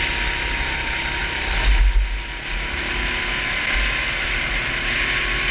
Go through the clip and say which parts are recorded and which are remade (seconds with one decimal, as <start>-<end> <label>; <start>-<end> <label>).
0.0-5.5 recorded